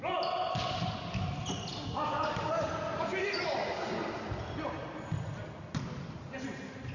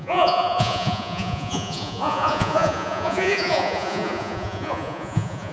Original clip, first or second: first